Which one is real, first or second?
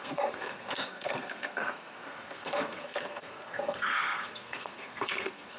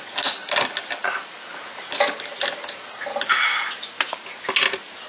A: second